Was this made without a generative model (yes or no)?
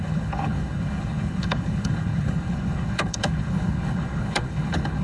no